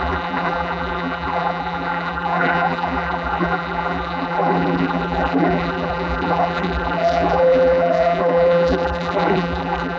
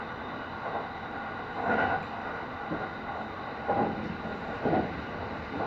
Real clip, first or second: second